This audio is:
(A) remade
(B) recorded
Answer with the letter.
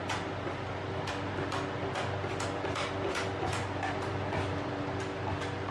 B